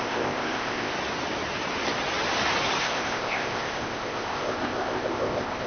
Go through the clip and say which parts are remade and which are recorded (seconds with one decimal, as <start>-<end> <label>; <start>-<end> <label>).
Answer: 0.0-0.9 remade; 0.9-2.8 recorded; 2.8-5.7 remade